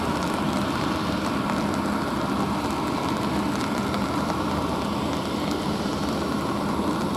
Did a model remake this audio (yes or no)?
no